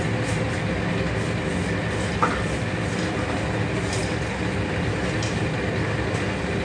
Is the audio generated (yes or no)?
no